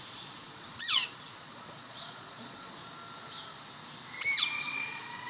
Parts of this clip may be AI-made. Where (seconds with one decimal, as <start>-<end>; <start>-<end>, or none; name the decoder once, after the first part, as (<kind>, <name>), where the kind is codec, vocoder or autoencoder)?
0.0-2.8 (vocoder, Vocos); 4.6-5.3